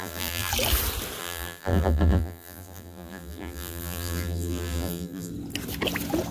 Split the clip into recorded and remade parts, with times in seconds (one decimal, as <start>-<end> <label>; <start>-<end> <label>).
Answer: 0.0-0.5 remade; 0.5-1.2 recorded; 1.2-5.3 remade; 5.3-6.3 recorded

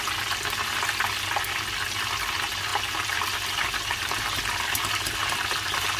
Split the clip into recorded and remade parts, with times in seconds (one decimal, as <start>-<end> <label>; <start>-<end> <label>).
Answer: 0.0-6.0 recorded

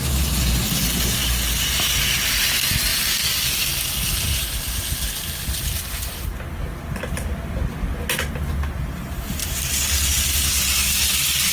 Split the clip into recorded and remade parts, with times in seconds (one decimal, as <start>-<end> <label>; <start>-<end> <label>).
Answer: 0.0-11.5 recorded

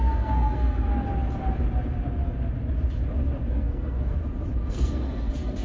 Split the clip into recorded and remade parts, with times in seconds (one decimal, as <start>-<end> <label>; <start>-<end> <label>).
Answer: 0.0-0.9 remade; 0.9-3.5 recorded; 3.5-4.2 remade; 4.2-4.7 recorded; 4.7-5.6 remade

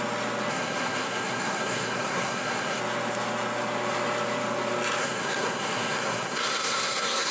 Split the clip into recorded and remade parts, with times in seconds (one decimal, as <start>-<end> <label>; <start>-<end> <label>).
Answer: 0.0-0.5 recorded; 0.5-2.8 remade; 2.8-5.0 recorded; 5.0-7.3 remade

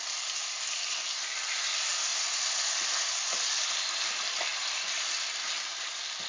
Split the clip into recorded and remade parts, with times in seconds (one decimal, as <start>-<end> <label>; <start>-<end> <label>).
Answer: 0.0-2.1 recorded; 2.1-3.6 remade; 3.6-4.5 recorded; 4.5-5.5 remade; 5.5-6.3 recorded

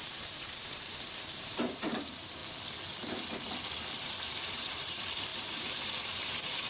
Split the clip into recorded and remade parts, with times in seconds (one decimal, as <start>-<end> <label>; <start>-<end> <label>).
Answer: 0.0-2.4 remade; 2.4-4.0 recorded; 4.0-6.7 remade

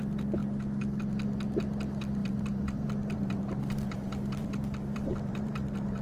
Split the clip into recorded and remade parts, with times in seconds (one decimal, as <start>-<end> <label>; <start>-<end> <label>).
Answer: 0.0-2.2 recorded; 2.2-6.0 remade